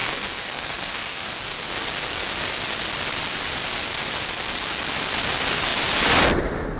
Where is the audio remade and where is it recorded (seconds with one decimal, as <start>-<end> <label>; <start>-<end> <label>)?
0.0-1.4 remade; 1.4-6.8 recorded